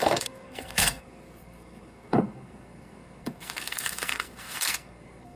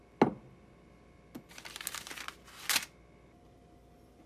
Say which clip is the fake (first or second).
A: first